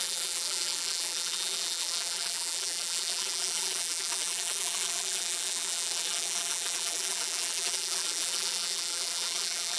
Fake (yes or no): yes